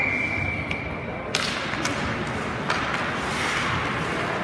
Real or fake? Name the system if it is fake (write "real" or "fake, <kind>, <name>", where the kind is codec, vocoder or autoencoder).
real